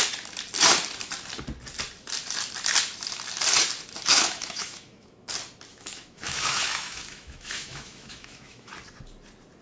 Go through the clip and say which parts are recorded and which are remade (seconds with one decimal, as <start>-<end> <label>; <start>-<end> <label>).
0.0-4.1 recorded; 4.1-5.3 remade; 5.3-5.7 recorded; 5.7-8.7 remade; 8.7-9.6 recorded